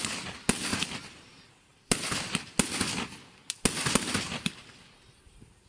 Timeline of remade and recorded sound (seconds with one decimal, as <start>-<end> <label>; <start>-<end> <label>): 0.0-5.7 recorded